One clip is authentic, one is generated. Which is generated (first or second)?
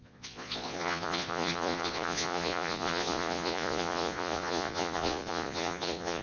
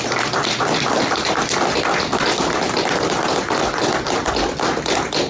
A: first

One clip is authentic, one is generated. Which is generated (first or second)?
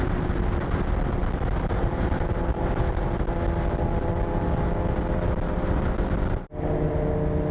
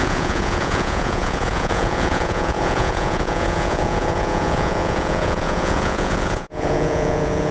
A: second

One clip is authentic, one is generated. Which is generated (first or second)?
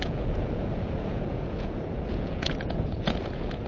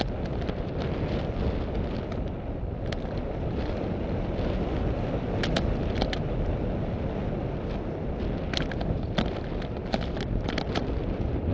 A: first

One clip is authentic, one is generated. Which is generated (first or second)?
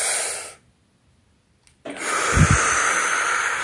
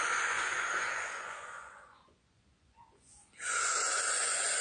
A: second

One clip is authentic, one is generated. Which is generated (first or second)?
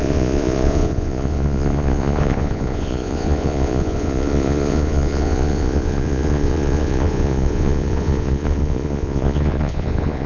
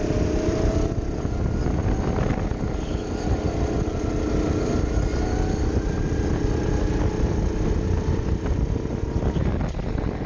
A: first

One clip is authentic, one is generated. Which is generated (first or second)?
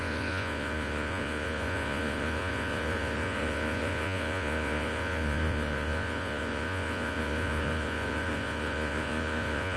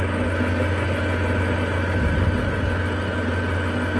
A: first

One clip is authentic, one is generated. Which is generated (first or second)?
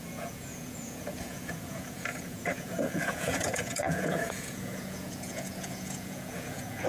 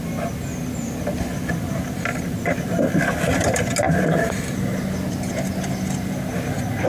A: first